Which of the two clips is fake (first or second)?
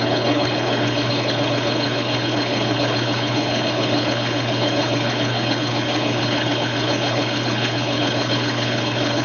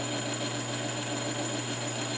first